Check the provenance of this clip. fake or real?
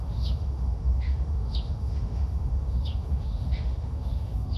fake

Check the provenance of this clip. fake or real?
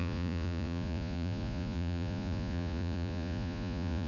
fake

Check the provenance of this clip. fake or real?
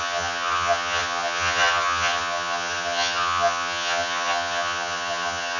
fake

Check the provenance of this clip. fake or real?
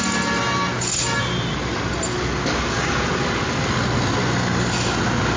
real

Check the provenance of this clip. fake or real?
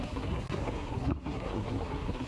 fake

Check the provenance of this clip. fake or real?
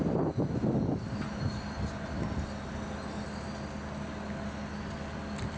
real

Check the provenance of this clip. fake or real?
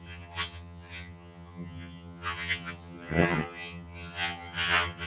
fake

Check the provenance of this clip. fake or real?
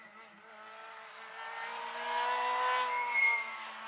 real